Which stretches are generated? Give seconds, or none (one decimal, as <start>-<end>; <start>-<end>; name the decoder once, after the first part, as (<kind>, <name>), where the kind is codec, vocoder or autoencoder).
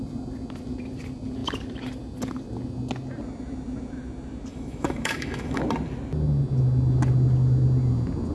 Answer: 4.5-5.6 (autoencoder, DAC-VAE)